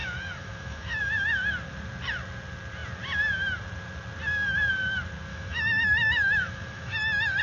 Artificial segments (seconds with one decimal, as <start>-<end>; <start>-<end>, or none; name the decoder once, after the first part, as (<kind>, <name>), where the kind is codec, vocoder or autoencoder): 0.0-1.0 (autoencoder, DAC-VAE); 5.3-7.4